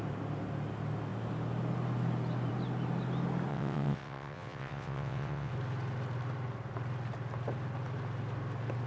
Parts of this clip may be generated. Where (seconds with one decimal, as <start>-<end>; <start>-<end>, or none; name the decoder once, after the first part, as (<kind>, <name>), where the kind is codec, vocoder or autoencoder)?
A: 3.5-5.5 (vocoder, WaveNeXt)